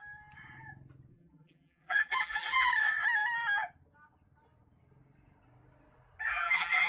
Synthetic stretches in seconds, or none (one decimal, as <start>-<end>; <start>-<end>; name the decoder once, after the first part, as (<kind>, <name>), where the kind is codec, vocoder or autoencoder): 1.1-2.7 (vocoder, BigVGAN v2); 6.3-6.9